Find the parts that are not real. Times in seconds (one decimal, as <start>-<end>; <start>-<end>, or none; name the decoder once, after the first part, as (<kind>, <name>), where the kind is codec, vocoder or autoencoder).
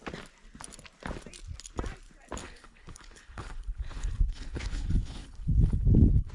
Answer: 2.4-6.3 (codec, HILCodec)